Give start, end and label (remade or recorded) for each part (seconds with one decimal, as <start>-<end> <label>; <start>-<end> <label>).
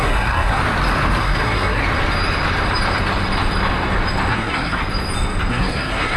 0.0-0.6 remade; 0.6-1.2 recorded; 1.2-1.8 remade; 1.8-4.3 recorded; 4.3-4.8 remade; 4.8-5.5 recorded; 5.5-6.2 remade